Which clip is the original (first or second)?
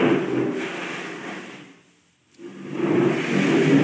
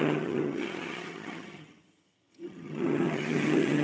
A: first